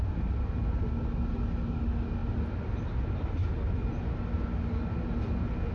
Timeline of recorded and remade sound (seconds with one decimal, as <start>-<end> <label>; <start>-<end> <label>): 0.0-5.7 recorded